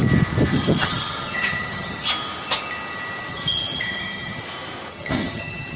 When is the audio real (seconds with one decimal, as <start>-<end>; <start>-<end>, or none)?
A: 0.0-0.5; 2.1-3.3; 4.4-4.9

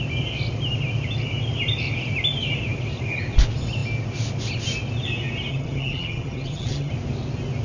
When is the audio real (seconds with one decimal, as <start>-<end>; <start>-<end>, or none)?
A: 0.0-5.5; 6.9-7.6